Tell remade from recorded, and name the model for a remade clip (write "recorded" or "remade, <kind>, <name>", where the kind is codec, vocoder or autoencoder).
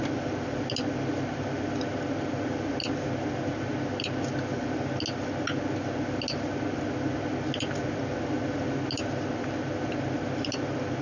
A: recorded